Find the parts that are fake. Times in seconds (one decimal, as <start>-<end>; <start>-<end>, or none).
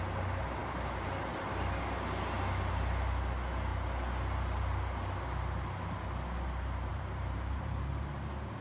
6.9-8.1